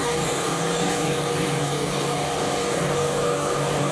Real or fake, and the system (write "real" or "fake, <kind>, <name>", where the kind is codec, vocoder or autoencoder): fake, codec, DAC